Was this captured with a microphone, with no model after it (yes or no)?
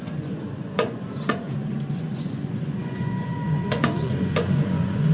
no